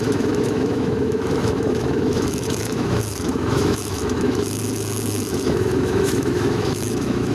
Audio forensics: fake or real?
fake